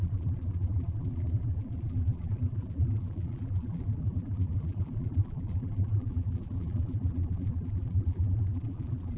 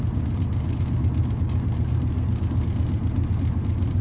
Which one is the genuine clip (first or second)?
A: second